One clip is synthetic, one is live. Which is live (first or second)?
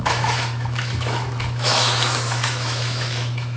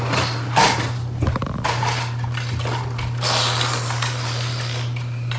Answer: second